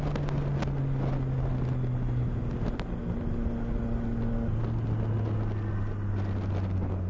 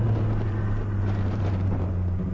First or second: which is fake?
second